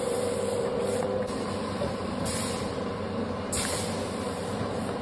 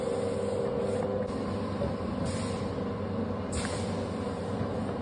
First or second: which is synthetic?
first